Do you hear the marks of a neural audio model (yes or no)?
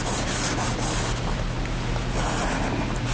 no